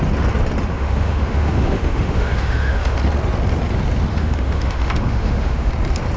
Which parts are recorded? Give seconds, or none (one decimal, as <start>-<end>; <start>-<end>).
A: 0.0-0.7; 3.0-4.1; 5.7-6.2